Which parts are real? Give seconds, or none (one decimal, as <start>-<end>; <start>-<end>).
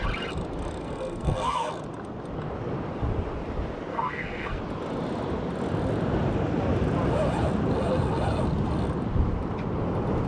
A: 0.0-0.8; 1.7-3.9; 4.6-10.3